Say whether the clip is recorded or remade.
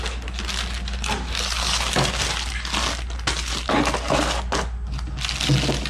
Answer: recorded